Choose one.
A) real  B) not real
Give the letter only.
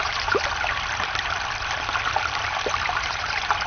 A